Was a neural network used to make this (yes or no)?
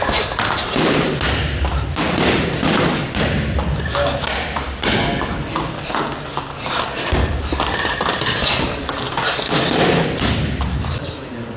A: no